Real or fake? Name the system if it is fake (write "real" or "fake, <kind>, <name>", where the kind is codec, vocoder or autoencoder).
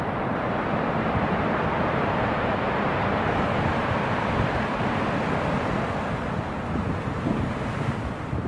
real